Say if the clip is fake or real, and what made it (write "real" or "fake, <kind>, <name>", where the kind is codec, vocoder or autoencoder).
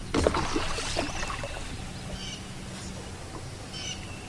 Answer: real